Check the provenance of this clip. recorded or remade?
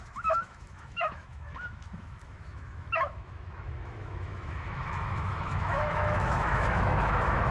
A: remade